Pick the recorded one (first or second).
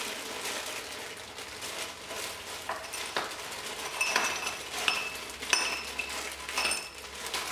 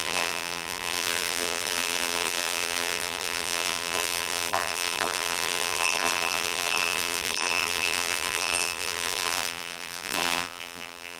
first